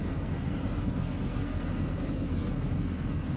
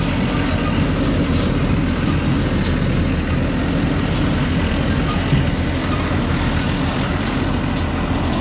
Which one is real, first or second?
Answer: second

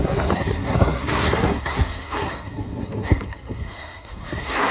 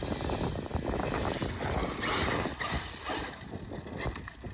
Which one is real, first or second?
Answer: second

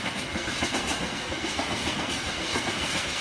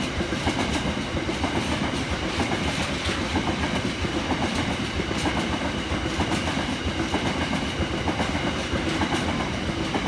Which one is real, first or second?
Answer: second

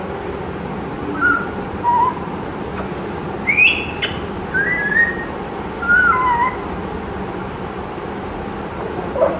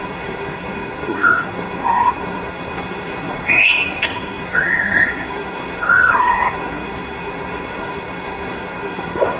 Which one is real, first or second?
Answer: first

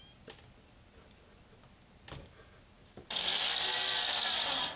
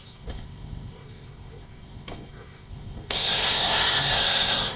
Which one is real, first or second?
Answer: first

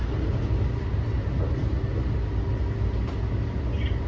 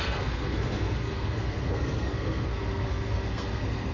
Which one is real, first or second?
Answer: first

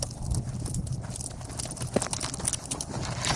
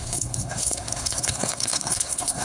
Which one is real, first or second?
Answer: first